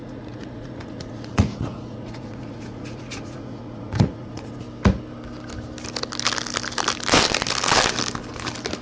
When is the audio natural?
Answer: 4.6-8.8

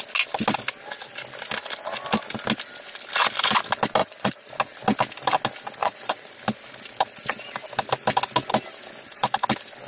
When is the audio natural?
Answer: 0.0-4.0; 4.5-5.8; 6.3-9.9

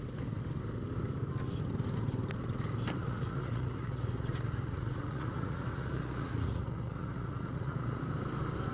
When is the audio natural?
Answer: 0.0-3.0; 8.0-8.7

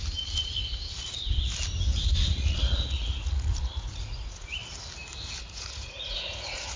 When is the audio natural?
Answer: 0.0-2.3; 4.6-5.4

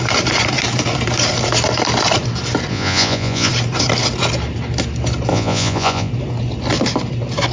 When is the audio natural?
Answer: 0.0-2.7; 3.5-5.3; 6.1-7.5